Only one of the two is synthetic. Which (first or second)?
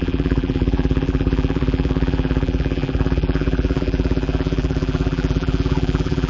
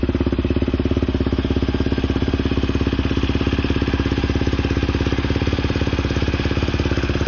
first